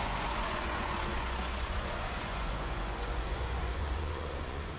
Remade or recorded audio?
remade